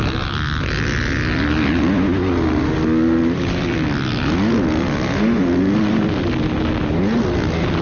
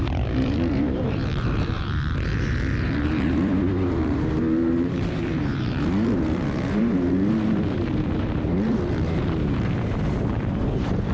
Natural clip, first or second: first